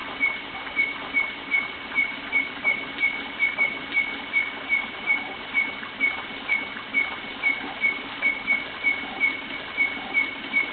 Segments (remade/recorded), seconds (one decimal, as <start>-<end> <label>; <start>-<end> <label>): 0.0-10.7 recorded